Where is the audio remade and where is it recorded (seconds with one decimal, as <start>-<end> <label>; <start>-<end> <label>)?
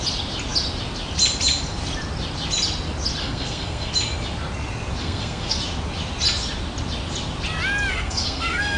0.0-3.2 recorded; 3.2-3.9 remade; 3.9-5.0 recorded; 5.0-5.6 remade; 5.6-7.9 recorded; 7.9-8.8 remade